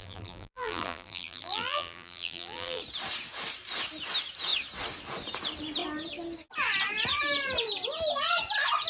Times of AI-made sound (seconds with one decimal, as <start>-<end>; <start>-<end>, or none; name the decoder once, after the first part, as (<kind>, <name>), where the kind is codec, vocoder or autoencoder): 0.0-2.8 (vocoder, BigVGAN v2)